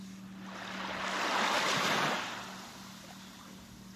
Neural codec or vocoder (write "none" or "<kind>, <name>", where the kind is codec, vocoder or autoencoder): none